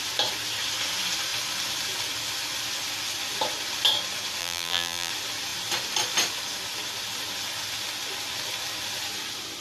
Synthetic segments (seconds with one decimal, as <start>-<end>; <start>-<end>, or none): 4.4-5.1